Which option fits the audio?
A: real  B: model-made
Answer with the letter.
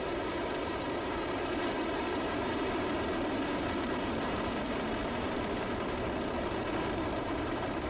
B